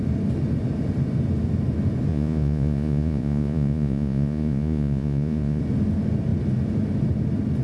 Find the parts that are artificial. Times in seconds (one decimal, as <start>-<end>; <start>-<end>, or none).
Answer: 2.1-5.6